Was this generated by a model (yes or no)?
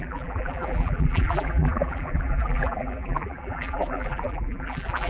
yes